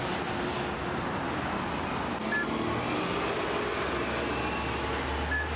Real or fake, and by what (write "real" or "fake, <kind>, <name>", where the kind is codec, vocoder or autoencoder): real